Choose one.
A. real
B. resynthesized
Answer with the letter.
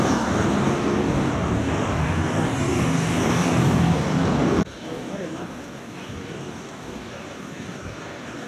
B